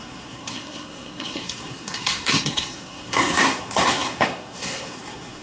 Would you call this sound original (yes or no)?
no